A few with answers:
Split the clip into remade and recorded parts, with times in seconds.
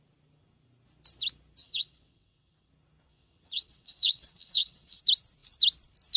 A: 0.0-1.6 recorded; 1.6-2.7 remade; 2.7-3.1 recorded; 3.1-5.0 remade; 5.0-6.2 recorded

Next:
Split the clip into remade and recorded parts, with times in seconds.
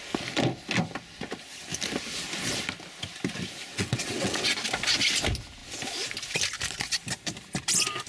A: 0.0-3.7 recorded; 3.7-4.5 remade; 4.5-8.1 recorded